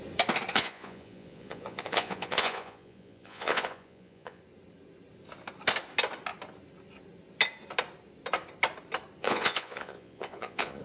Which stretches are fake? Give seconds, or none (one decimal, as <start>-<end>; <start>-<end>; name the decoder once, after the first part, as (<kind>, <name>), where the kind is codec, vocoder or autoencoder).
0.5-4.4 (vocoder, Vocos); 9.2-10.8